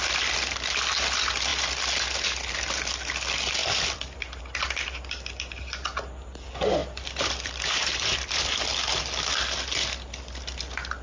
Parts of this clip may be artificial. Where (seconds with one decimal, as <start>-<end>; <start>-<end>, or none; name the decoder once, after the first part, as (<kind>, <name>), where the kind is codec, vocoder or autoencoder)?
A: 3.6-4.4 (vocoder, BigVGAN v2); 6.8-8.4